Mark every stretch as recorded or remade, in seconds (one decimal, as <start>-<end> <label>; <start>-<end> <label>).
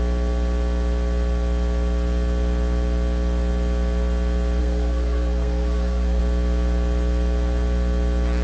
0.0-4.6 recorded; 4.6-6.2 remade; 6.2-8.4 recorded